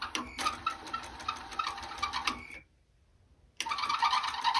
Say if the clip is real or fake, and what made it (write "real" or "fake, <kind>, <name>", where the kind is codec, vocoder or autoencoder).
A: real